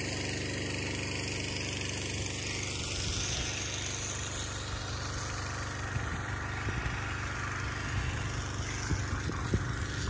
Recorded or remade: recorded